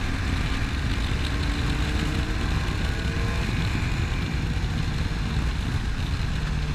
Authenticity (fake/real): real